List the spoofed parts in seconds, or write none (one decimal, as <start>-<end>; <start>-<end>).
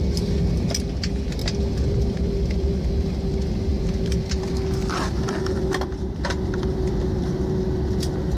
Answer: 1.4-3.1; 3.7-7.0